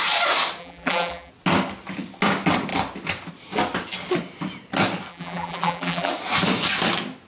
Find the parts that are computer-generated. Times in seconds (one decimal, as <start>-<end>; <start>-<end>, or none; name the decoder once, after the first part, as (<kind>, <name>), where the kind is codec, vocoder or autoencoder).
0.6-1.3 (vocoder, BigVGAN v2); 5.1-6.1